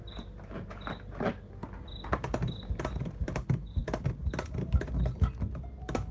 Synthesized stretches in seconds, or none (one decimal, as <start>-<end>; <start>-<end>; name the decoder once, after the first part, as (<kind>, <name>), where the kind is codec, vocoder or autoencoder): none